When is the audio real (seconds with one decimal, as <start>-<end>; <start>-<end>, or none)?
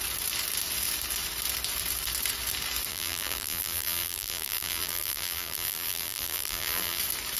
0.0-2.9; 7.0-7.4